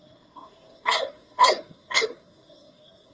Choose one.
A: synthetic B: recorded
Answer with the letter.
A